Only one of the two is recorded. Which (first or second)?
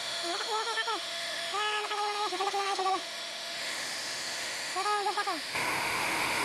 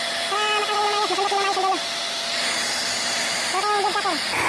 second